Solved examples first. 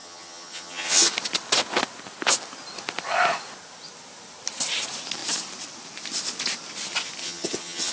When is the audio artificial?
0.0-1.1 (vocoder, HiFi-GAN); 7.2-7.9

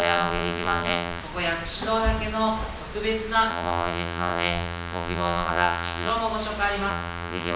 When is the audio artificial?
0.0-1.2 (vocoder, BigVGAN v2); 3.5-6.1; 6.9-7.6

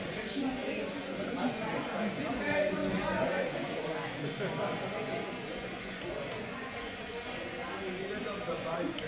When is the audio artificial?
0.0-7.6 (vocoder, Vocos); 8.2-9.1

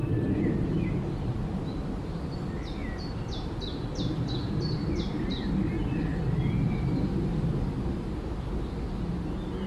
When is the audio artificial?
none

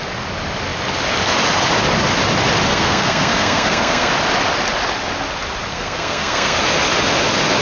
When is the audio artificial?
2.7-4.1 (codec, SNAC); 5.7-6.6

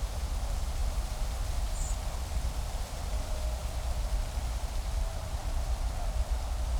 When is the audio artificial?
none

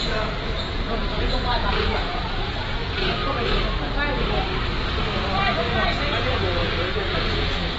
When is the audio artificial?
0.0-3.2 (vocoder, Vocos); 5.7-7.8

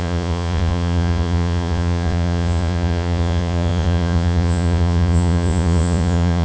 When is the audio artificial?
0.0-6.4 (vocoder, Vocos)